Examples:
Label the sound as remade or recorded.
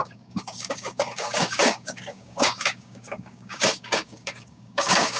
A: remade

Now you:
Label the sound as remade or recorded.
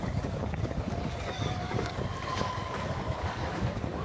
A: remade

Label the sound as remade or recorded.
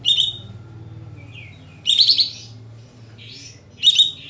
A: recorded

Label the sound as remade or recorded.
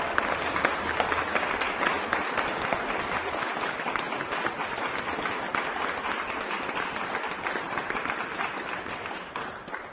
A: recorded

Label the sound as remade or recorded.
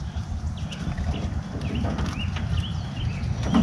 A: recorded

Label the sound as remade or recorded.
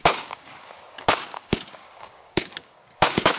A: remade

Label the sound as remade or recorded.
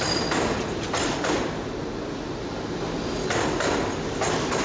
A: recorded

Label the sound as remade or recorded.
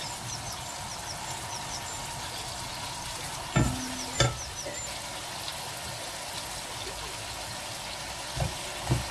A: recorded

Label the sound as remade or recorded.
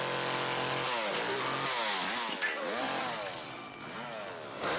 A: recorded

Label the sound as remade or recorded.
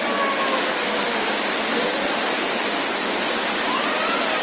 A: recorded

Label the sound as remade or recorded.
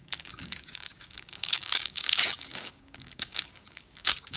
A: remade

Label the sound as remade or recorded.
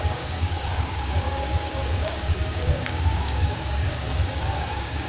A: remade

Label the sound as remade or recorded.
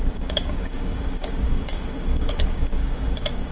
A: remade